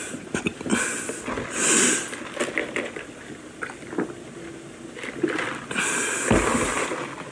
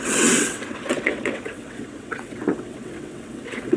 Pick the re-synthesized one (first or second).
second